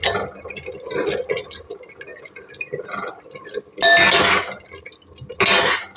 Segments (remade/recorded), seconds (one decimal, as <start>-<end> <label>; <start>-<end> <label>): 0.0-6.0 recorded